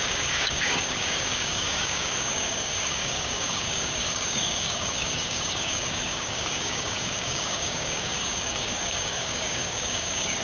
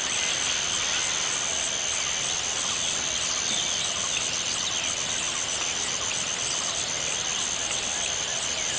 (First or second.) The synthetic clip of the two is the first